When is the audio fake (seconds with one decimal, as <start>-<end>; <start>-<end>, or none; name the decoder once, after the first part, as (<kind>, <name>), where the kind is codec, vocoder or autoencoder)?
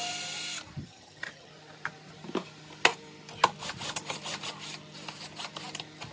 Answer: 0.8-1.5 (vocoder, HiFi-GAN)